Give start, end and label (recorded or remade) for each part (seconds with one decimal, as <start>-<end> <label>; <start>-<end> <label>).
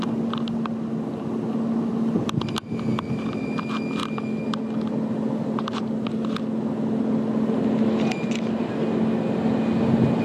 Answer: 0.0-10.2 recorded